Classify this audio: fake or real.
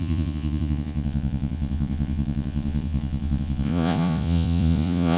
fake